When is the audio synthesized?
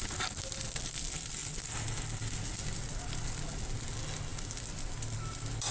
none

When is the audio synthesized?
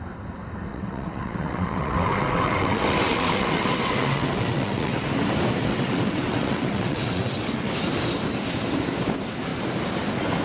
0.7-5.1 (vocoder, WaveNeXt); 5.7-7.7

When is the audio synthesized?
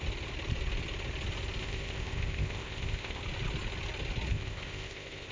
1.6-3.2 (codec, ZipCodec); 4.3-5.3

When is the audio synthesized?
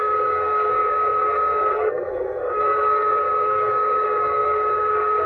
0.0-5.3 (codec, SNAC)